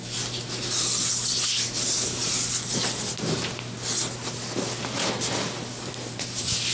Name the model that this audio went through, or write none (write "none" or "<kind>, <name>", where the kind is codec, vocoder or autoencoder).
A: none